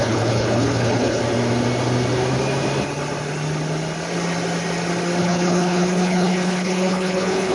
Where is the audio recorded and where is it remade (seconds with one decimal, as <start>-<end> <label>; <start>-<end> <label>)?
0.0-1.2 remade; 1.2-5.2 recorded; 5.2-7.5 remade